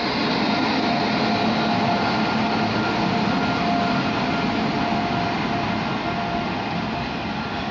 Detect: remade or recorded recorded